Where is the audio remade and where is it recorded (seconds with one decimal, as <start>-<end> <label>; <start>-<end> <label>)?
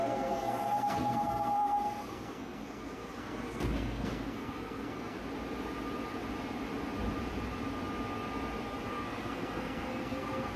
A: 0.0-5.2 remade; 5.2-8.9 recorded; 8.9-10.6 remade